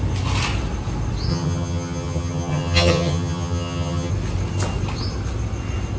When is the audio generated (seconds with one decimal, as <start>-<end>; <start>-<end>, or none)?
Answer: 1.3-4.1